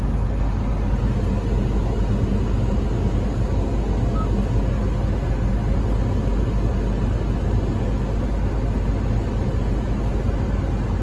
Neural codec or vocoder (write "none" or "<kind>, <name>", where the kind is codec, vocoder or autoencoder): none